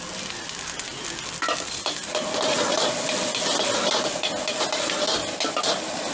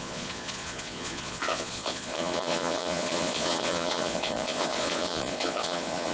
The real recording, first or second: first